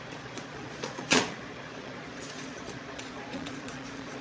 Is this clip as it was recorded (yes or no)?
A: no